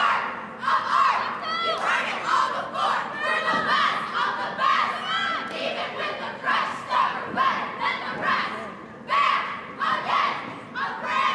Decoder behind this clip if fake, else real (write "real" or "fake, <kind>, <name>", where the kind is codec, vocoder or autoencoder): real